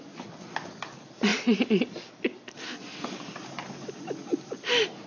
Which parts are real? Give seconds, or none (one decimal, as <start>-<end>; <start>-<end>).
0.0-5.1